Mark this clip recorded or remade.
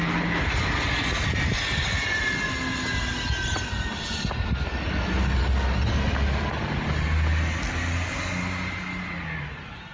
recorded